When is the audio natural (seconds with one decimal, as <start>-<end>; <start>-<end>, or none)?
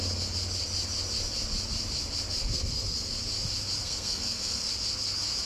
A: 0.0-2.4; 3.2-3.8; 4.7-5.5